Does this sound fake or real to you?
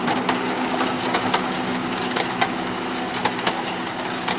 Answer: fake